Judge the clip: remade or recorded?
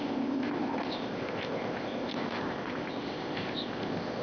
remade